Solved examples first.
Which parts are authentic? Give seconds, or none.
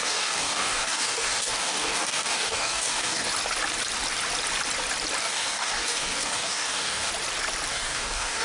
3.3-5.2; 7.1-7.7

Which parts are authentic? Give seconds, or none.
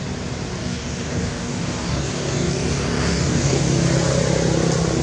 0.0-0.6; 3.6-5.0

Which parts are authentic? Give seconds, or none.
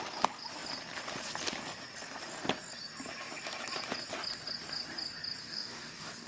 0.0-5.4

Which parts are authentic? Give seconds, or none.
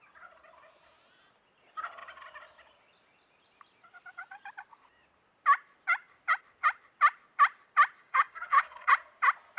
0.0-8.0; 8.9-9.6